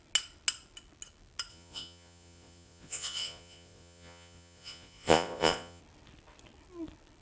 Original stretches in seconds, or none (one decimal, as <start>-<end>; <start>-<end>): 0.0-1.5; 5.8-7.2